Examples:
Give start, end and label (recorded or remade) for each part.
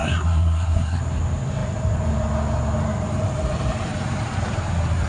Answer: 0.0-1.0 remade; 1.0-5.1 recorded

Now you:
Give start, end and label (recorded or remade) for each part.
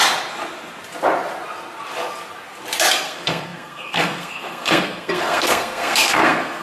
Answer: 0.0-2.9 recorded; 2.9-6.6 remade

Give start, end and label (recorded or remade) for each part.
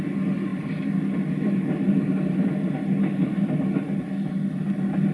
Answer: 0.0-5.1 recorded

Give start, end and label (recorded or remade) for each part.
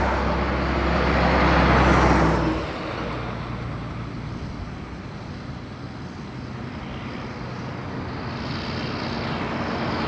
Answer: 0.0-10.1 recorded